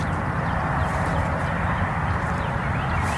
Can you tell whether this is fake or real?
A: real